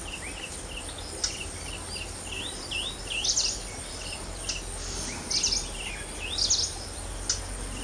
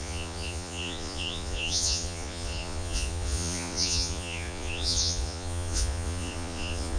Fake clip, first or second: second